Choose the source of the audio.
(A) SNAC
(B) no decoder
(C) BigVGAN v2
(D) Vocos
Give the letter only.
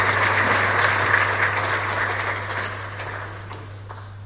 B